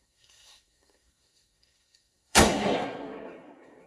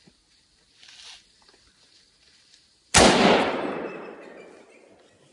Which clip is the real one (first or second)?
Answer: second